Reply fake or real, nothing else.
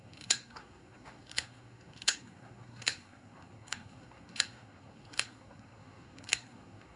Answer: fake